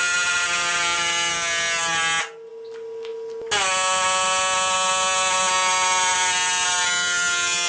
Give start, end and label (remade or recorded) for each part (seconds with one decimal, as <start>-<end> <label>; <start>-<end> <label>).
0.0-7.7 recorded